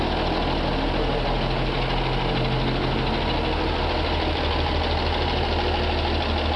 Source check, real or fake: real